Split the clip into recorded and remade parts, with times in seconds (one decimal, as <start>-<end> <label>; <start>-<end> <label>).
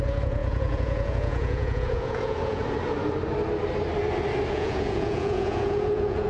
0.0-2.6 remade; 2.6-4.5 recorded; 4.5-6.3 remade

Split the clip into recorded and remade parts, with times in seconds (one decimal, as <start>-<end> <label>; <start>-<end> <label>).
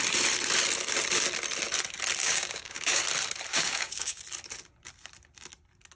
0.0-2.2 recorded; 2.2-3.0 remade; 3.0-3.5 recorded; 3.5-4.2 remade; 4.2-6.0 recorded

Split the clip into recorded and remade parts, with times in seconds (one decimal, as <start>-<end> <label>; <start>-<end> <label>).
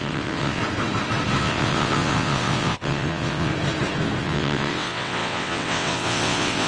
0.0-0.6 remade; 0.6-1.4 recorded; 1.4-3.5 remade; 3.5-4.2 recorded; 4.2-6.7 remade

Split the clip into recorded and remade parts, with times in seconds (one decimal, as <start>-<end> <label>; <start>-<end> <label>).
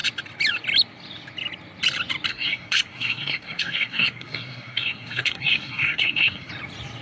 0.0-2.3 recorded; 2.3-6.5 remade; 6.5-7.0 recorded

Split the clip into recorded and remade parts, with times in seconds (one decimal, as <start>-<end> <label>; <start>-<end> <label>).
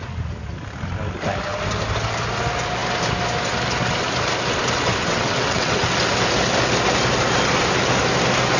0.0-5.0 recorded; 5.0-5.9 remade; 5.9-8.6 recorded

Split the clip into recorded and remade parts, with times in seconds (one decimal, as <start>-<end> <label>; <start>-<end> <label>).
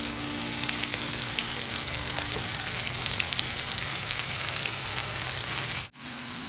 0.0-6.5 remade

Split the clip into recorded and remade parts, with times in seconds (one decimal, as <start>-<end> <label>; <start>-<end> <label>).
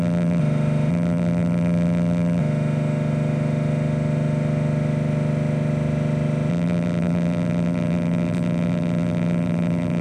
0.0-0.4 remade; 0.4-0.9 recorded; 0.9-2.4 remade; 2.4-6.5 recorded; 6.5-10.0 remade